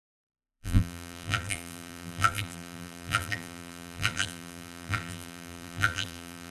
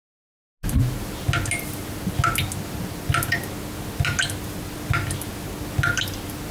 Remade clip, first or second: first